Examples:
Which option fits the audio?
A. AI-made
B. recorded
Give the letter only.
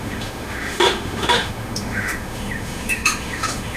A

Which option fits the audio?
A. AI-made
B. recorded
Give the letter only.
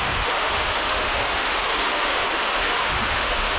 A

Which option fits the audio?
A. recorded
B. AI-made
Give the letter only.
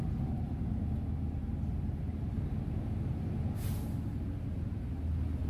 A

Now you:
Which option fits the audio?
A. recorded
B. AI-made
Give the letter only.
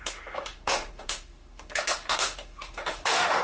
B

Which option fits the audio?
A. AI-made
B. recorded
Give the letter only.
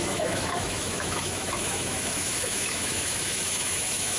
A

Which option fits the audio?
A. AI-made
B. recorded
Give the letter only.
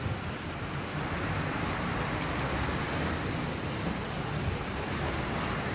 B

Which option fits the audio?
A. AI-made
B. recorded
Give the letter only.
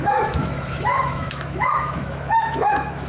A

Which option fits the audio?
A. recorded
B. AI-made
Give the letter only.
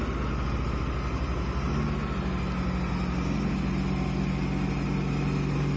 A